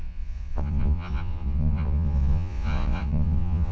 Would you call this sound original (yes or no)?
no